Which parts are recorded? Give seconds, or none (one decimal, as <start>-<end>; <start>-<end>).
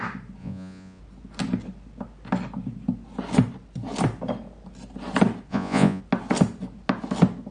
0.0-0.4; 1.0-5.5; 6.0-7.5